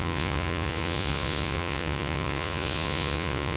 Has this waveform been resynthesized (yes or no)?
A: yes